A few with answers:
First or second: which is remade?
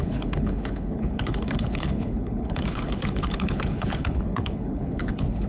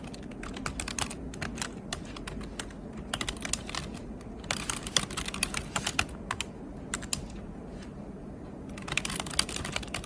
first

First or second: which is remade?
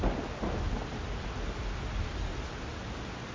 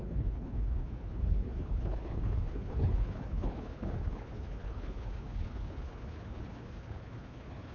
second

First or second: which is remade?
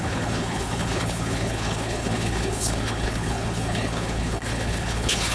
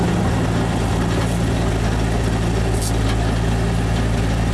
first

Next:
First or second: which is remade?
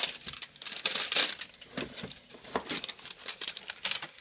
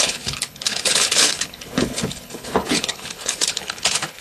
second